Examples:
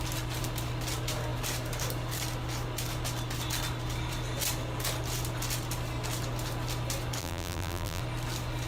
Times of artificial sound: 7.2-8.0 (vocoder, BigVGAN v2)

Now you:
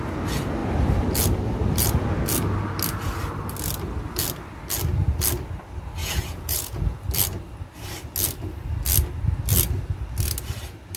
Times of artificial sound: 6.0-7.0 (vocoder, Vocos)

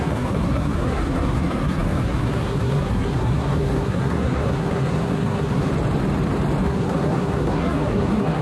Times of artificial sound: 0.0-5.7 (codec, SNAC); 6.6-8.4

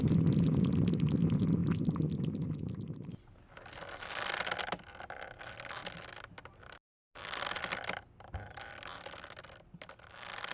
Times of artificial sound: none

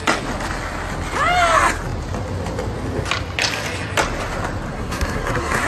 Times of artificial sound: 4.7-5.7 (codec, SNAC)

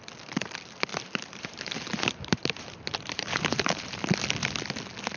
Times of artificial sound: 0.9-4.0 (vocoder, BigVGAN v2)

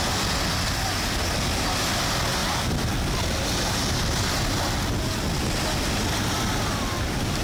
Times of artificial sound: none

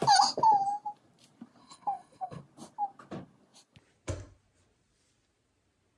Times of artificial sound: 1.6-2.4 (codec, SNAC)